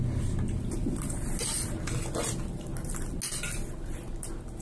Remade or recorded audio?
recorded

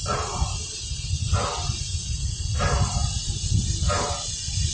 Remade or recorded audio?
recorded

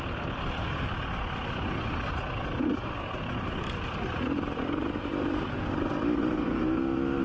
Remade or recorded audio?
recorded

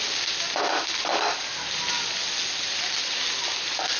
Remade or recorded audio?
recorded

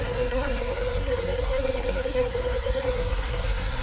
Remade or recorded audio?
remade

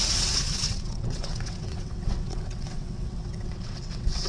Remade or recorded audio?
remade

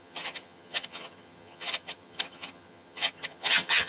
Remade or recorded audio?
remade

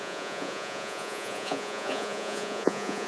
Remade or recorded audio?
remade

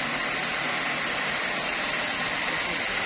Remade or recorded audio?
recorded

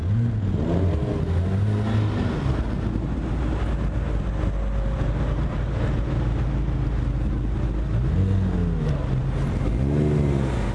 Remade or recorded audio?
recorded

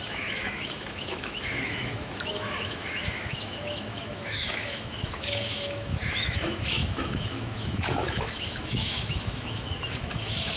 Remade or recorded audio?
remade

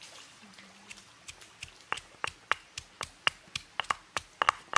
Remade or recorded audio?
recorded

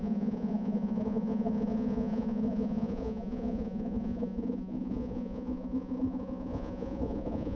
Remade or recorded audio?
remade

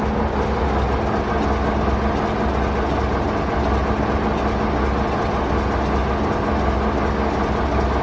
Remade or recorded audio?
recorded